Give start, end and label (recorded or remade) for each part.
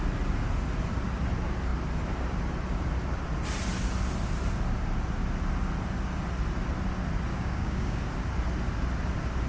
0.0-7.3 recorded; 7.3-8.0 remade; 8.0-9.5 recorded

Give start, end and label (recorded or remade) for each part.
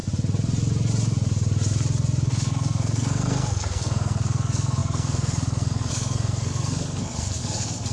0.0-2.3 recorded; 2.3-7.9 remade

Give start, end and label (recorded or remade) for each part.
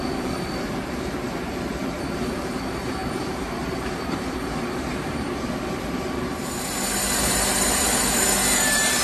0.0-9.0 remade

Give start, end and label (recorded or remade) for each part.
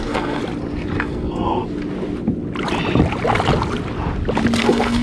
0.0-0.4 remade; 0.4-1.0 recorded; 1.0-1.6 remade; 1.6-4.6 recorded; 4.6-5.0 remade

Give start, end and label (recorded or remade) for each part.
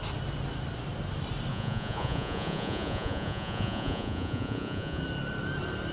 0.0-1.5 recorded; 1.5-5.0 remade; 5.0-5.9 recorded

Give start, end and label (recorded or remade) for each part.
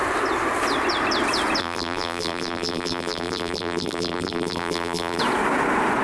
0.0-1.6 recorded; 1.6-5.2 remade; 5.2-6.0 recorded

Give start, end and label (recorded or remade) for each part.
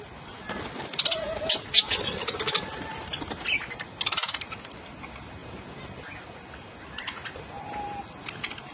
0.0-8.7 recorded